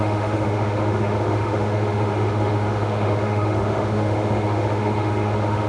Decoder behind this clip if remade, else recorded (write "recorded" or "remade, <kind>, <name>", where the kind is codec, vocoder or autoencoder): remade, autoencoder, DAC-VAE